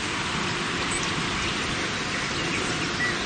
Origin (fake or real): real